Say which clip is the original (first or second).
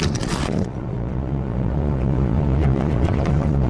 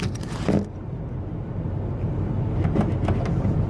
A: second